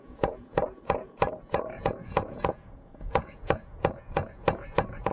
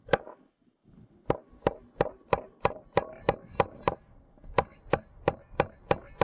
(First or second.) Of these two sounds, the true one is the second